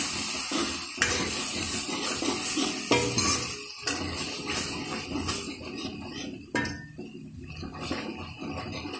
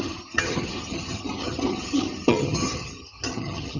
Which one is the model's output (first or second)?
second